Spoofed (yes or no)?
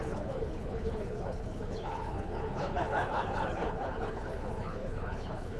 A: yes